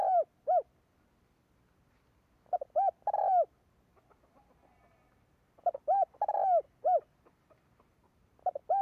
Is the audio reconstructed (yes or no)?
no